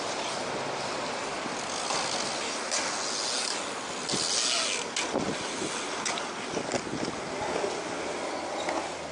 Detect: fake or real real